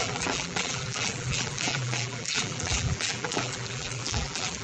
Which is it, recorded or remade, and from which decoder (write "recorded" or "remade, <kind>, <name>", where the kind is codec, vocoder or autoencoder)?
remade, vocoder, BigVGAN v2